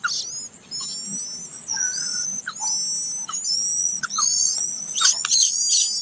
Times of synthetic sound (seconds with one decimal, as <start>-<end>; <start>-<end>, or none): 1.5-2.4; 3.8-5.6